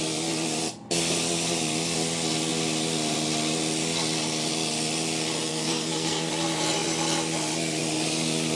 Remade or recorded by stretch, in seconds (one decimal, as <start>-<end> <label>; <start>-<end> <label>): 0.0-5.5 recorded; 5.5-6.3 remade; 6.3-8.5 recorded